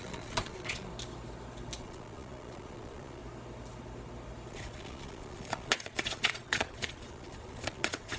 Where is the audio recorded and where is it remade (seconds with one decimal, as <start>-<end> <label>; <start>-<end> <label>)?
0.0-0.9 remade; 0.9-1.8 recorded; 1.8-3.2 remade; 3.2-4.5 recorded; 4.5-8.2 remade

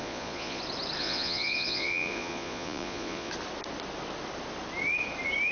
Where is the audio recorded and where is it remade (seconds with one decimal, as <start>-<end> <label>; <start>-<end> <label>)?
0.0-0.6 remade; 0.6-1.0 recorded; 1.0-3.3 remade; 3.3-5.5 recorded

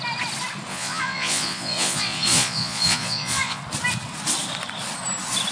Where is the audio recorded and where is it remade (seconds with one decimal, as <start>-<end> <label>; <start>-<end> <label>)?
0.0-0.7 recorded; 0.7-3.6 remade; 3.6-5.5 recorded

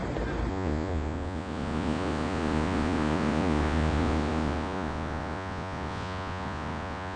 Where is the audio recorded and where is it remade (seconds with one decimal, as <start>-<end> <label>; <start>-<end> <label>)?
0.0-0.5 recorded; 0.5-7.2 remade

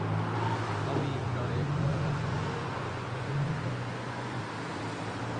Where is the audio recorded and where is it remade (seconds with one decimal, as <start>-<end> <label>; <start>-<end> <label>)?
0.0-1.2 recorded; 1.2-4.4 remade; 4.4-5.4 recorded